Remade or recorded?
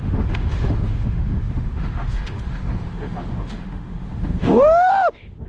remade